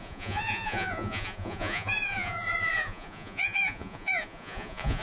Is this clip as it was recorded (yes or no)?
no